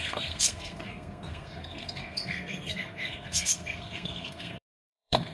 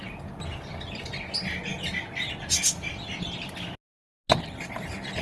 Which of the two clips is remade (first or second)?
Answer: first